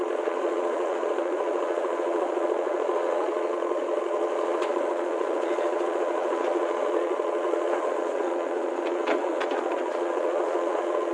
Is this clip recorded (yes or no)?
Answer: no